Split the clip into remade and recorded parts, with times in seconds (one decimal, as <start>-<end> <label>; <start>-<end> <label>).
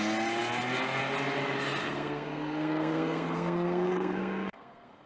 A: 0.0-1.8 recorded; 1.8-5.1 remade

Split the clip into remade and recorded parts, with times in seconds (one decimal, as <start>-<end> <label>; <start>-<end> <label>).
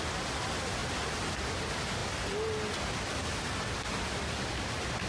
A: 0.0-5.1 recorded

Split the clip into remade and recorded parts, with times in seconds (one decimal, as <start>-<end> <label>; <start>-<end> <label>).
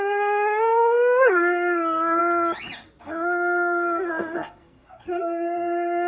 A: 0.0-2.2 remade; 2.2-3.0 recorded; 3.0-6.1 remade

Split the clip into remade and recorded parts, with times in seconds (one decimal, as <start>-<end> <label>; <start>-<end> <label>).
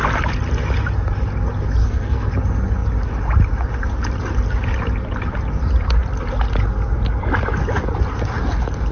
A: 0.0-1.8 recorded; 1.8-2.3 remade; 2.3-8.9 recorded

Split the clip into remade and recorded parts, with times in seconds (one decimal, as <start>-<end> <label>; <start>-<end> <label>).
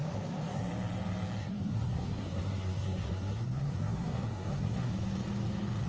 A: 0.0-0.6 remade; 0.6-1.4 recorded; 1.4-4.9 remade; 4.9-5.9 recorded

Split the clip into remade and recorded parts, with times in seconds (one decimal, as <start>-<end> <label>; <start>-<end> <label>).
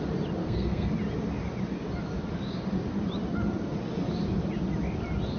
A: 0.0-0.4 recorded; 0.4-0.9 remade; 0.9-5.4 recorded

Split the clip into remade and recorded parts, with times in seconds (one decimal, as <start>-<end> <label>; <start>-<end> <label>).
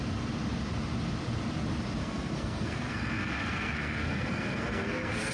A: 0.0-2.0 recorded; 2.0-5.3 remade